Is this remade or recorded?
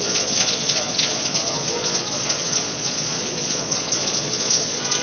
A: remade